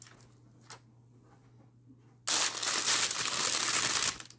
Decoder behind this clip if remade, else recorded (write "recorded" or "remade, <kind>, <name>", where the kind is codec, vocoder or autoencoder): recorded